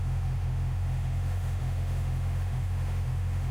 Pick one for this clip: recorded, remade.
remade